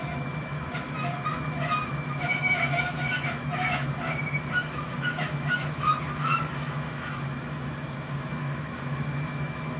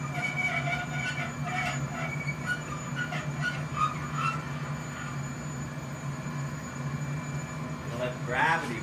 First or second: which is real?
second